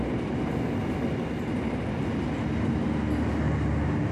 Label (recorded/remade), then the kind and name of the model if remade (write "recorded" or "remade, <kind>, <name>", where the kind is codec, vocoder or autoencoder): recorded